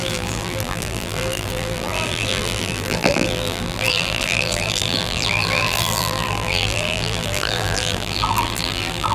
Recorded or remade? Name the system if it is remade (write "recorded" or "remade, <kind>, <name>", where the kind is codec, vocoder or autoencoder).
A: remade, vocoder, BigVGAN v2